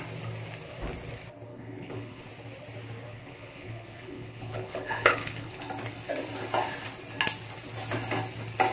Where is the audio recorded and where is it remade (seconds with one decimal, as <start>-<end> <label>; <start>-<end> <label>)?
0.0-1.5 recorded; 1.5-2.3 remade; 2.3-3.1 recorded; 3.1-5.6 remade; 5.6-8.7 recorded